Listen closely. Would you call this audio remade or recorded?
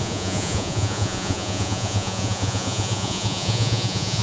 remade